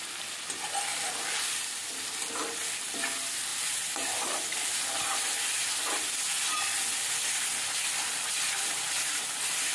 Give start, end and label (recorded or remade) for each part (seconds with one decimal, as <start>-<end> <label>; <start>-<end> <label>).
0.0-3.5 recorded; 3.5-6.1 remade; 6.1-9.7 recorded